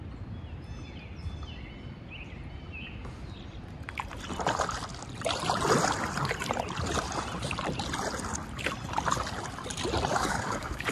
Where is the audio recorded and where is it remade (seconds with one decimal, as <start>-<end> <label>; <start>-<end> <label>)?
0.0-10.1 recorded; 10.1-10.9 remade